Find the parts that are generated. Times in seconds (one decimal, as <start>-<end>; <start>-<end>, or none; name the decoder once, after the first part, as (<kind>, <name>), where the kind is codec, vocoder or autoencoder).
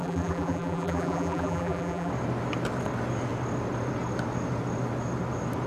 0.0-2.1 (vocoder, BigVGAN v2)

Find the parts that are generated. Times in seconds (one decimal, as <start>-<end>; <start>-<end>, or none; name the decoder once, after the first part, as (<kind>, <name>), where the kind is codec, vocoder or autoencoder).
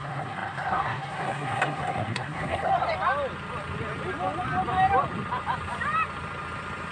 0.0-2.7 (codec, SNAC)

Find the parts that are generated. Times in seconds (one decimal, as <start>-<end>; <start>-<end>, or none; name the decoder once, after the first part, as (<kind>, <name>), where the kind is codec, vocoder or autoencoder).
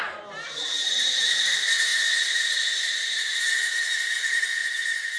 0.0-4.6 (vocoder, BigVGAN v2)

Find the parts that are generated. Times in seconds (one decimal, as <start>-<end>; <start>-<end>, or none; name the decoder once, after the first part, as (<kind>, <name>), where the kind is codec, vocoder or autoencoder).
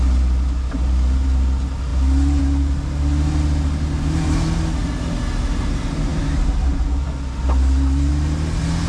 none